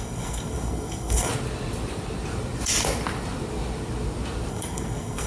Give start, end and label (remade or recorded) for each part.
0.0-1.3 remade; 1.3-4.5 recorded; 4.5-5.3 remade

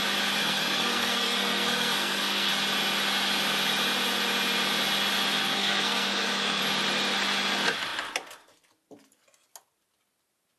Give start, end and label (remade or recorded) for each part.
0.0-0.4 recorded; 0.4-2.5 remade; 2.5-5.4 recorded; 5.4-6.6 remade; 6.6-10.6 recorded

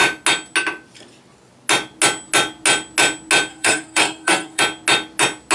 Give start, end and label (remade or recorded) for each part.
0.0-3.5 recorded; 3.5-4.6 remade; 4.6-5.5 recorded

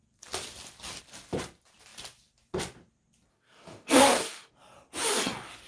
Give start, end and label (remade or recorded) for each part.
0.0-3.3 recorded; 3.3-4.5 remade; 4.5-5.7 recorded